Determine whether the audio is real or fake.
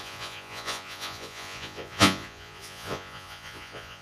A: fake